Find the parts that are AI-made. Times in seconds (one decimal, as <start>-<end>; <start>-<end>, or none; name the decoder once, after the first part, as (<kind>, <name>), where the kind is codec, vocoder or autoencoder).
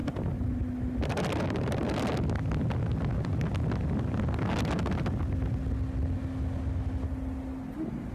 none